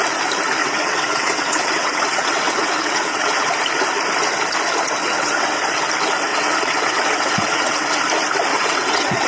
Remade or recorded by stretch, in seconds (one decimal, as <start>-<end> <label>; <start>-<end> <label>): 0.0-0.6 recorded; 0.6-3.5 remade; 3.5-5.0 recorded; 5.0-5.6 remade; 5.6-6.3 recorded; 6.3-8.0 remade; 8.0-8.5 recorded; 8.5-9.3 remade